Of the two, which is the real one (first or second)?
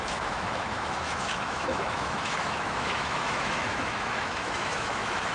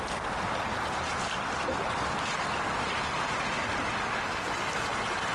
second